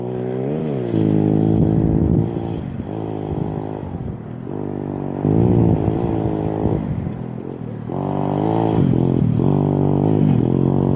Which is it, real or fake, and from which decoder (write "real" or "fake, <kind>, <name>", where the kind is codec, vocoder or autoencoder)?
fake, vocoder, BigVGAN v2